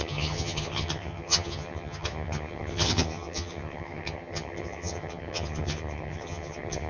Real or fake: fake